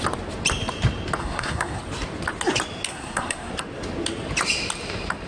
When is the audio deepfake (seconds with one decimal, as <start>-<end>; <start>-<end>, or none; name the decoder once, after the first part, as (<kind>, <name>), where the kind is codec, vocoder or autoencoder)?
1.2-1.8 (codec, SNAC); 2.9-3.5